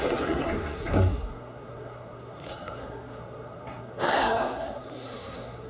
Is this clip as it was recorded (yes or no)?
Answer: no